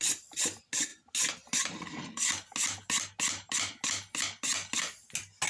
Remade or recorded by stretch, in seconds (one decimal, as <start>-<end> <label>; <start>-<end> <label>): 0.0-5.5 recorded

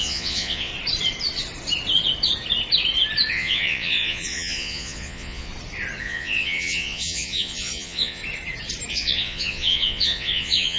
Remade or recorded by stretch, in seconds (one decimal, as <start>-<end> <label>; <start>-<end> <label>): 0.0-0.7 remade; 0.7-3.3 recorded; 3.3-5.5 remade; 5.5-6.0 recorded; 6.0-8.2 remade; 8.2-8.9 recorded; 8.9-10.8 remade

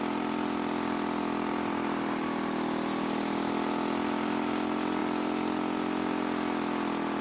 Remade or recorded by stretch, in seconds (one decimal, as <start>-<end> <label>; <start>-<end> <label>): 0.0-7.2 recorded